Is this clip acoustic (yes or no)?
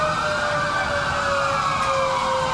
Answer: yes